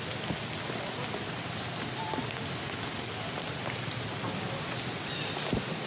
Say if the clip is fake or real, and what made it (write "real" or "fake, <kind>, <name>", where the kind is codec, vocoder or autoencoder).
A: real